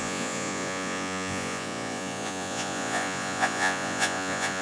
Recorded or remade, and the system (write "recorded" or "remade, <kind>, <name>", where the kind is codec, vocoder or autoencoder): remade, vocoder, Vocos